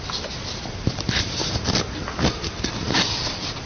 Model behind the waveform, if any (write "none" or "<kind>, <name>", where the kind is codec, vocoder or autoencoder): none